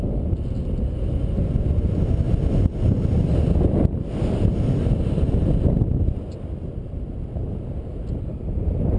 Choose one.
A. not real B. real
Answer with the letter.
B